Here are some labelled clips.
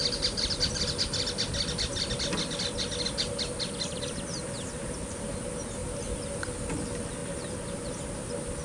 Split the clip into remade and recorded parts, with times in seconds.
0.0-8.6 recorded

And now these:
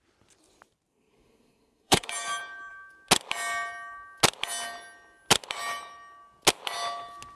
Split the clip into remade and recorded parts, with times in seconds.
0.0-0.9 recorded; 0.9-2.1 remade; 2.1-7.4 recorded

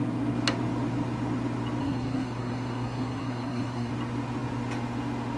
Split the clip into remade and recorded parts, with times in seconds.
0.0-1.8 recorded; 1.8-3.9 remade; 3.9-5.4 recorded